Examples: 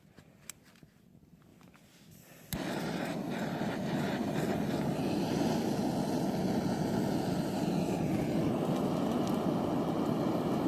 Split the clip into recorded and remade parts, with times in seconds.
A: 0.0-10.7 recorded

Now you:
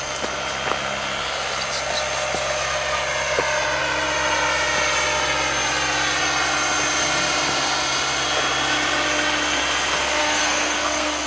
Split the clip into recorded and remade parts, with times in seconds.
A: 0.0-10.2 recorded; 10.2-11.3 remade

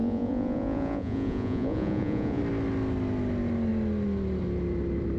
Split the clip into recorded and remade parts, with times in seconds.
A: 0.0-2.4 remade; 2.4-5.2 recorded

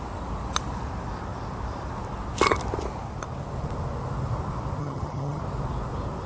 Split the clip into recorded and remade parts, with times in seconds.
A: 0.0-4.8 recorded; 4.8-5.4 remade; 5.4-6.3 recorded